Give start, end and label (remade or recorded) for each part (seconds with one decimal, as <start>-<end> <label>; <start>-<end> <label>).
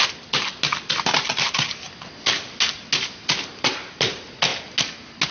0.0-5.3 recorded